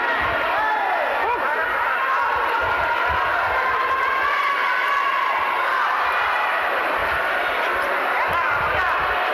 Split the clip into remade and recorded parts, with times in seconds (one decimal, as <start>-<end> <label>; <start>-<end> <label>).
0.0-0.8 recorded; 0.8-9.3 remade